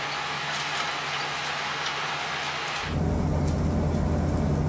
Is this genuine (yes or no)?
yes